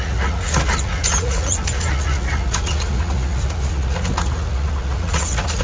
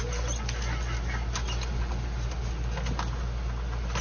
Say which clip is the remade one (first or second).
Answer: first